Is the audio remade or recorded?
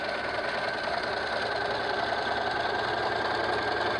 recorded